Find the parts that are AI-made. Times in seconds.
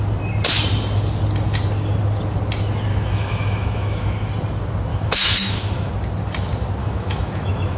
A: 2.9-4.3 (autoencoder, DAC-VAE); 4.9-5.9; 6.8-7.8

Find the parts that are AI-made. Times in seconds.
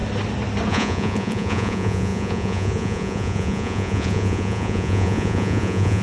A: 0.7-6.0 (vocoder, Vocos)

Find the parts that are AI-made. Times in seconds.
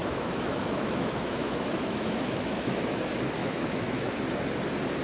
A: 0.0-3.0 (autoencoder, DAC-VAE); 3.4-4.2